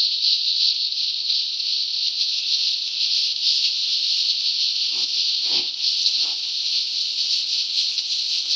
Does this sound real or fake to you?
fake